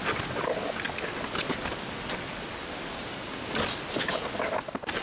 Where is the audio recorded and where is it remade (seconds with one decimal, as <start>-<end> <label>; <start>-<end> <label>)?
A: 0.0-2.9 recorded; 2.9-3.5 remade; 3.5-5.0 recorded